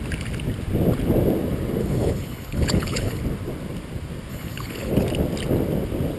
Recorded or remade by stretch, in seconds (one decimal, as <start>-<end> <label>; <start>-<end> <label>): 0.0-1.8 recorded; 1.8-3.2 remade; 3.2-4.3 recorded; 4.3-4.9 remade; 4.9-6.2 recorded